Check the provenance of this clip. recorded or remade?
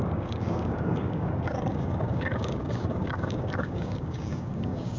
remade